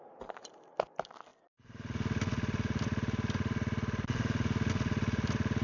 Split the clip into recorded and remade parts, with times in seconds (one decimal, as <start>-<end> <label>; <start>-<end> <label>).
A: 0.0-5.6 recorded